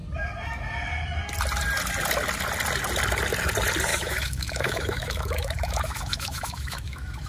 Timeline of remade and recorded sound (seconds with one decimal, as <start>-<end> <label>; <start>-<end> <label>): 0.0-3.9 recorded; 3.9-7.3 remade